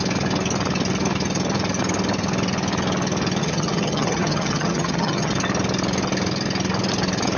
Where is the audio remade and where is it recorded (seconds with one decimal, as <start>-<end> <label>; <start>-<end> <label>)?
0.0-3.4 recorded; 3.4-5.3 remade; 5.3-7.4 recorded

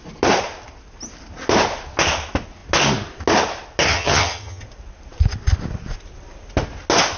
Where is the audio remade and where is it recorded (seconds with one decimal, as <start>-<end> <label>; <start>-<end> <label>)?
0.0-3.9 recorded; 3.9-4.6 remade; 4.6-7.2 recorded

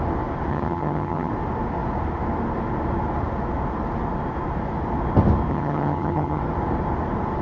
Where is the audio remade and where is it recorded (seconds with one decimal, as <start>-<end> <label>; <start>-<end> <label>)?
0.0-0.5 recorded; 0.5-1.3 remade; 1.3-5.5 recorded; 5.5-6.4 remade; 6.4-7.4 recorded

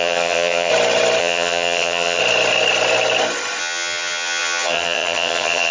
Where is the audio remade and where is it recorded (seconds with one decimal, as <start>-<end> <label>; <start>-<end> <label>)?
0.0-0.7 remade; 0.7-1.2 recorded; 1.2-2.2 remade; 2.2-3.6 recorded; 3.6-5.7 remade

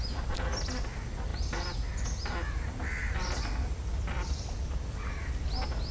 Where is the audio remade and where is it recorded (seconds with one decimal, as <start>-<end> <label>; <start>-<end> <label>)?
0.0-5.9 recorded